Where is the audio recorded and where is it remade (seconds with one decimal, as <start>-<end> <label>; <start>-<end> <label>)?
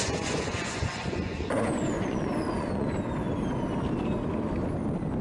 0.0-2.9 remade; 2.9-5.2 recorded